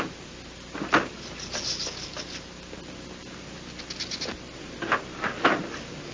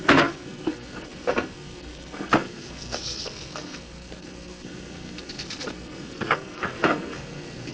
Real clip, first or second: first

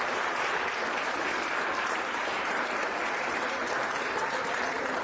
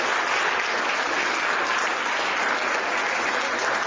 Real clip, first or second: second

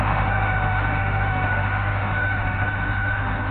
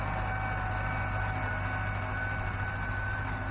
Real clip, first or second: second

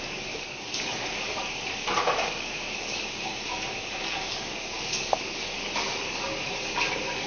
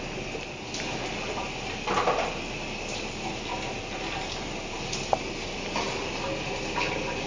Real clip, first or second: second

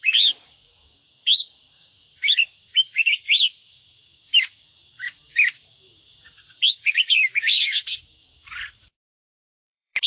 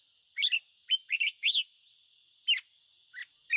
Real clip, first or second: second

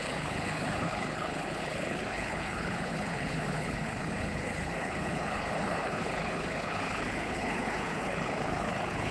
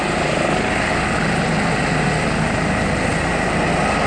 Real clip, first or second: second